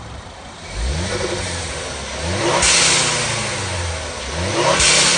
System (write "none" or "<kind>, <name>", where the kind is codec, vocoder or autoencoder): none